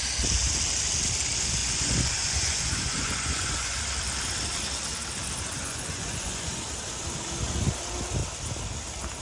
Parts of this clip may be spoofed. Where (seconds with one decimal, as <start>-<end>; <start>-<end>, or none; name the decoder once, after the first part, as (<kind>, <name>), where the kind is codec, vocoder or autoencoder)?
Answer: 1.6-3.8 (vocoder, Vocos); 5.6-6.6